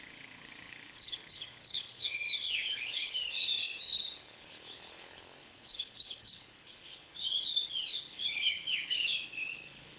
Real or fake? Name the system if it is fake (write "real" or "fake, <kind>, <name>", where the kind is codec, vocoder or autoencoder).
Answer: fake, codec, HILCodec